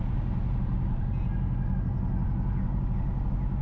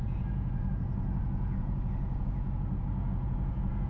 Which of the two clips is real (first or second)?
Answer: first